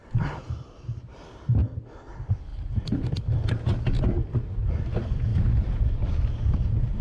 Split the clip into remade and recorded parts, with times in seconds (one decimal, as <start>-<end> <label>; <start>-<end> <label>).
0.0-1.3 remade; 1.3-2.5 recorded; 2.5-3.1 remade; 3.1-5.3 recorded; 5.3-6.0 remade; 6.0-7.0 recorded